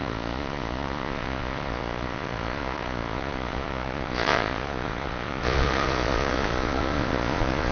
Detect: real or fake fake